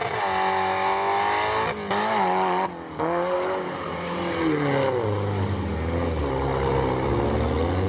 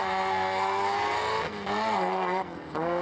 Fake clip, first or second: second